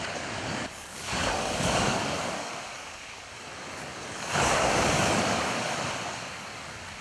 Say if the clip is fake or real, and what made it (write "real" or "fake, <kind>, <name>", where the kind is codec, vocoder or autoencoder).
fake, codec, DAC